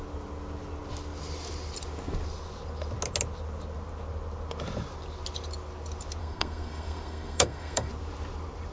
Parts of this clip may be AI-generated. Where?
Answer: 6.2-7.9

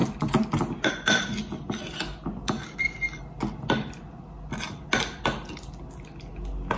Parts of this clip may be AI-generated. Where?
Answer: none